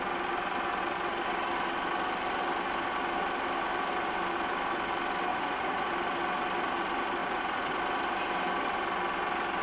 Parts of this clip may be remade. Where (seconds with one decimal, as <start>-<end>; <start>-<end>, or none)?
5.3-5.9; 7.2-7.8